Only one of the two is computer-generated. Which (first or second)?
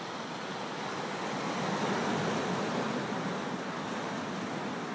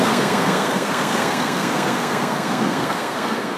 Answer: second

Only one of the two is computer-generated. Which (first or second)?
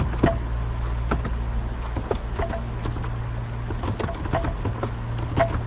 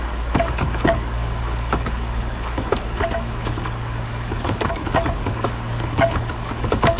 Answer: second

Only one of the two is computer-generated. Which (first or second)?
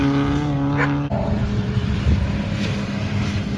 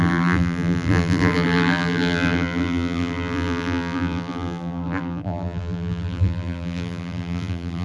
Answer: second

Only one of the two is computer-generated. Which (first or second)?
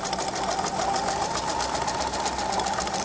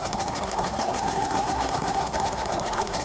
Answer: second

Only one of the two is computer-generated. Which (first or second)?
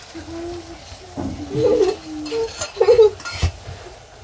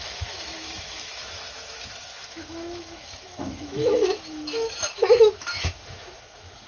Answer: second